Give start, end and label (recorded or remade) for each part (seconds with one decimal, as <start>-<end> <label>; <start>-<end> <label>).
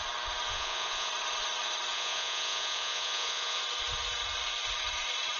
0.0-0.5 recorded; 0.5-1.1 remade; 1.1-1.9 recorded; 1.9-3.6 remade; 3.6-5.4 recorded